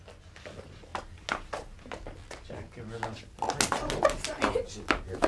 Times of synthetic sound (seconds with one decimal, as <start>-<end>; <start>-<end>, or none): none